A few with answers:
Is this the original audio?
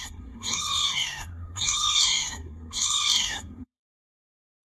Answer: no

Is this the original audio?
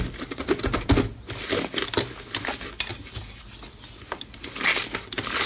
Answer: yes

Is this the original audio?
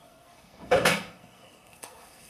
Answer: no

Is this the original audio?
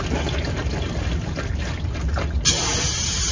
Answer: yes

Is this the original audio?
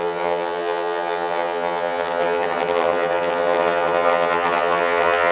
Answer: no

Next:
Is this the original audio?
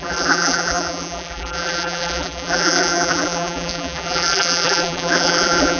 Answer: no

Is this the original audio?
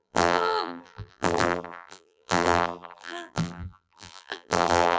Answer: no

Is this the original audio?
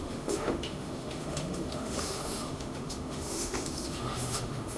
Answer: no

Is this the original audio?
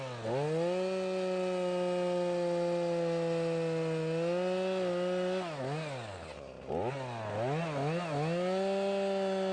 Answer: yes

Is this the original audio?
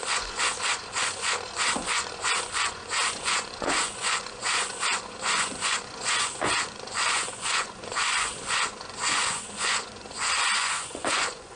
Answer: no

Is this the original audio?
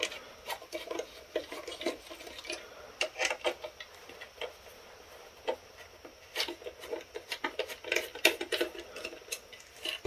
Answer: yes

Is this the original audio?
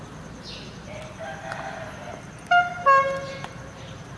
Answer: yes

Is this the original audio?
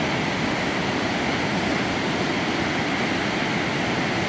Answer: yes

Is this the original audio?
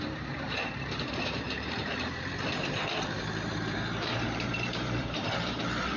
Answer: no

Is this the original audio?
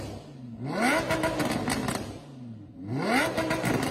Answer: yes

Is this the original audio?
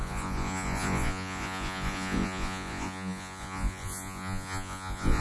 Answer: no